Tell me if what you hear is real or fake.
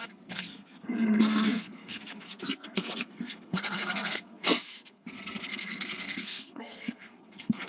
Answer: fake